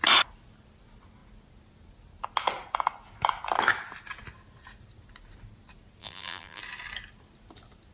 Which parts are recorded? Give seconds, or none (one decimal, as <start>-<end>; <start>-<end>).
0.0-6.0; 6.6-7.9